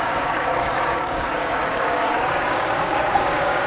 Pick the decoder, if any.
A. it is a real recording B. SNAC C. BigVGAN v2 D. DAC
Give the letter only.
D